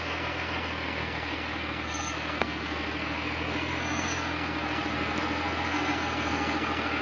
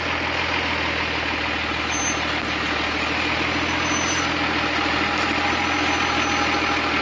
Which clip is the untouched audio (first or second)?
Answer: second